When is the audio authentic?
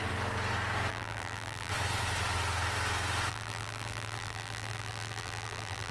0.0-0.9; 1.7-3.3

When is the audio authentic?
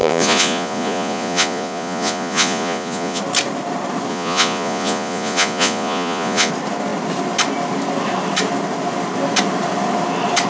3.2-4.1; 6.5-10.5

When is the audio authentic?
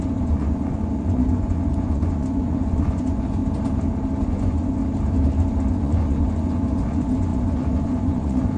3.4-4.2; 4.8-5.7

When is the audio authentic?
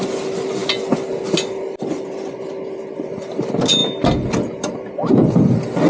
0.0-5.9